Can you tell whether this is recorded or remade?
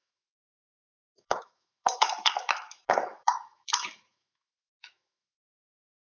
remade